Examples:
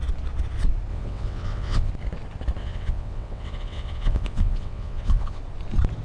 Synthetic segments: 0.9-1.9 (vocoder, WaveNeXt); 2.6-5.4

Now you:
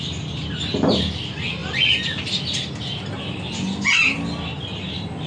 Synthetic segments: none